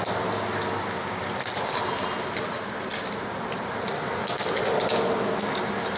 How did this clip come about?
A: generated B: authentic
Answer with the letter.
B